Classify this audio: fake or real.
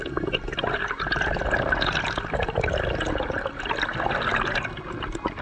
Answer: real